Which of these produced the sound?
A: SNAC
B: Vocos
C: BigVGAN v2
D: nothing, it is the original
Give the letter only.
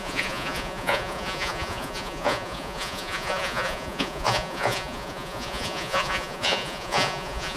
B